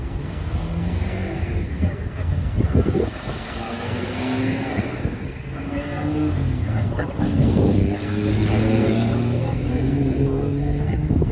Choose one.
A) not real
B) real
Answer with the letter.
A